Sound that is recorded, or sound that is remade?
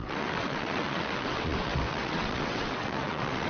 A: remade